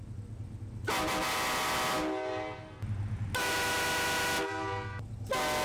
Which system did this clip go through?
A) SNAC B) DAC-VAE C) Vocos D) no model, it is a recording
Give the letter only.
D